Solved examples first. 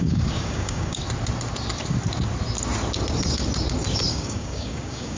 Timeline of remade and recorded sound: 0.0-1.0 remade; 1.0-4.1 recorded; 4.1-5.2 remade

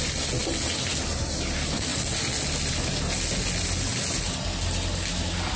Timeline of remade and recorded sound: 0.0-5.6 recorded

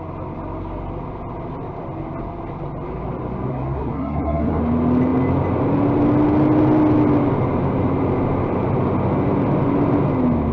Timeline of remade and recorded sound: 0.0-3.5 recorded; 3.5-4.6 remade; 4.6-10.5 recorded

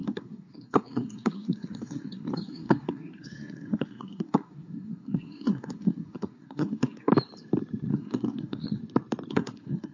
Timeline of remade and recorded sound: 0.0-7.1 remade; 7.1-7.9 recorded; 7.9-8.8 remade; 8.8-9.3 recorded; 9.3-9.9 remade

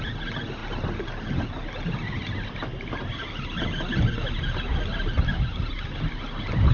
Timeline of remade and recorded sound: 0.0-6.7 recorded

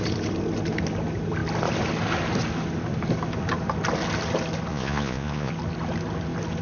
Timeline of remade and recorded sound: 0.0-4.7 recorded; 4.7-5.5 remade; 5.5-6.6 recorded

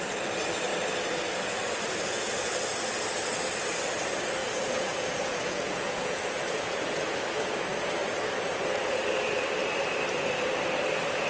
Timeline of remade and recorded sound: 0.0-4.4 recorded; 4.4-7.1 remade; 7.1-11.3 recorded